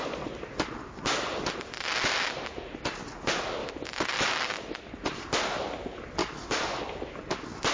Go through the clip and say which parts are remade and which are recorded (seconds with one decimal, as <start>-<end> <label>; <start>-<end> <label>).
0.0-6.2 recorded; 6.2-6.8 remade; 6.8-7.7 recorded